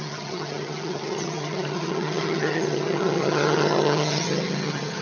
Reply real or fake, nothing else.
fake